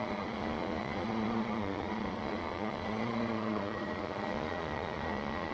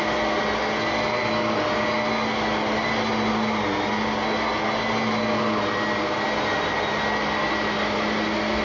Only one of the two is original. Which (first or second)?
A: second